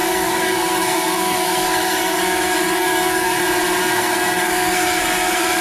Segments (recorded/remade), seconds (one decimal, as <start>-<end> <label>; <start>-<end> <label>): 0.0-3.4 remade; 3.4-3.8 recorded; 3.8-5.6 remade